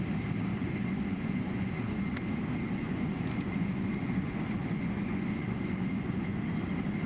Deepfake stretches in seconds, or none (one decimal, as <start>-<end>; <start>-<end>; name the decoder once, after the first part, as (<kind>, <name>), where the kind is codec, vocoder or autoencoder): 0.5-2.4 (vocoder, Vocos); 2.8-6.4